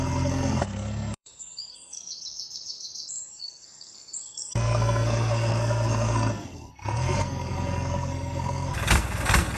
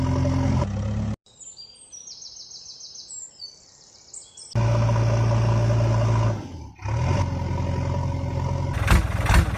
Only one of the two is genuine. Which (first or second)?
second